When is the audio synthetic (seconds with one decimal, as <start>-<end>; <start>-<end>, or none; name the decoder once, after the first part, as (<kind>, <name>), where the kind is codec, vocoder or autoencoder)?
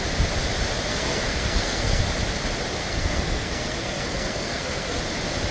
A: 0.9-2.0 (codec, SNAC); 2.8-5.0